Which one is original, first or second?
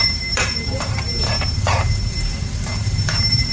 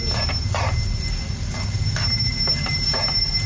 second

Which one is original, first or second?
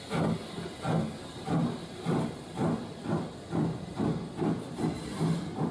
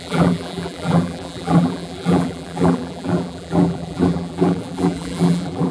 first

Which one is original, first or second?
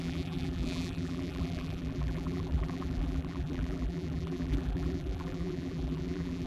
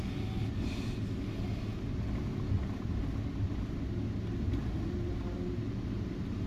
second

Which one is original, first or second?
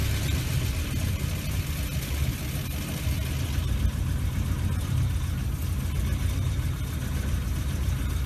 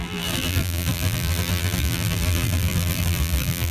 first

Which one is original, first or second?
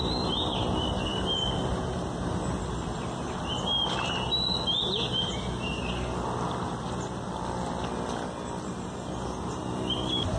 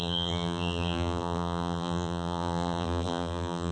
first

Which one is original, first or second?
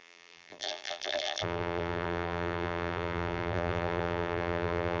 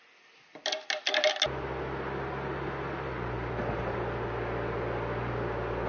second